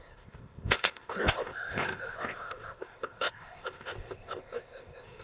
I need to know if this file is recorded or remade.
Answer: remade